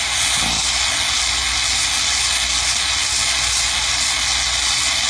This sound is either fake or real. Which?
real